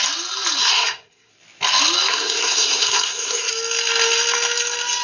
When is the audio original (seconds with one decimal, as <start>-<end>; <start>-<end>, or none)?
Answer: 0.0-0.6; 1.3-2.1; 3.5-5.0